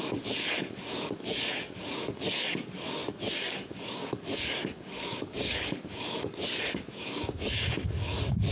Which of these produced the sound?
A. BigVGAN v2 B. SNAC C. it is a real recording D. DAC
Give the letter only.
D